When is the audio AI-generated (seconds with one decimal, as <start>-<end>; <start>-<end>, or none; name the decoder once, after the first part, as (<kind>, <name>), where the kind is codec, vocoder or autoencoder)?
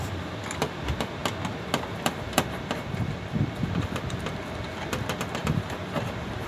0.0-1.2 (vocoder, BigVGAN v2); 1.9-6.5